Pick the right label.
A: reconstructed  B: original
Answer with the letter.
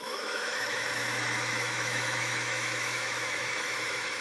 A